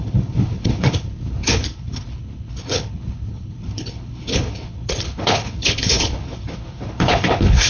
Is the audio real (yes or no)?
no